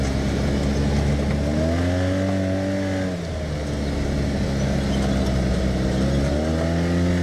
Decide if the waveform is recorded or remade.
recorded